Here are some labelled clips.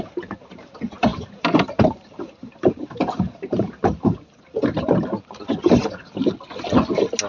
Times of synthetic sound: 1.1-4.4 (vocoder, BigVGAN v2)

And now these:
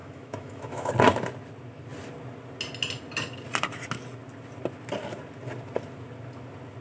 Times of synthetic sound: 0.0-0.9 (autoencoder, DAC-VAE)

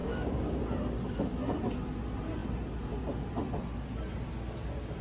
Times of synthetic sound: 0.0-0.6 (codec, DAC)

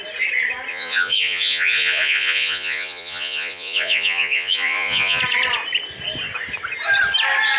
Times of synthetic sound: 0.7-5.2 (vocoder, Vocos)

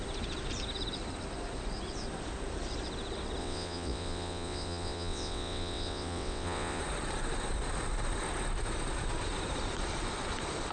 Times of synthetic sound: 3.4-6.8 (vocoder, WaveNeXt)

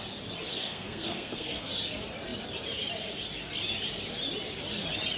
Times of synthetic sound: 0.5-1.7 (codec, SNAC)